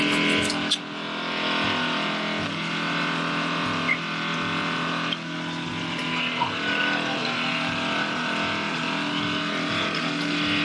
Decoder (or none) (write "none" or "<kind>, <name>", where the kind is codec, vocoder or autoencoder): none